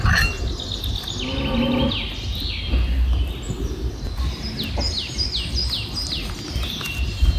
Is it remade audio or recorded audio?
recorded